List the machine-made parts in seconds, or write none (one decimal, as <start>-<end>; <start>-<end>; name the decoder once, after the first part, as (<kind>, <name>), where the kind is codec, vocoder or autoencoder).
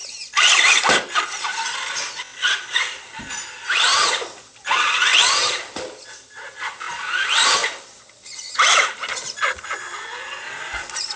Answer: none